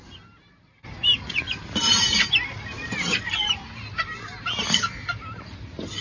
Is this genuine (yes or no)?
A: no